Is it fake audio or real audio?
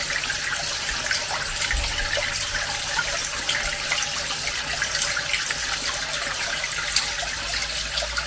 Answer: real